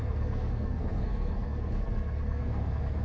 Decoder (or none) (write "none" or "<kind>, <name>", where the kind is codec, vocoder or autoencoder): codec, SNAC